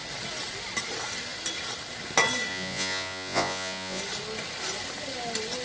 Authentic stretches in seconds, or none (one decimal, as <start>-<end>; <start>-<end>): 0.0-2.5; 4.0-5.6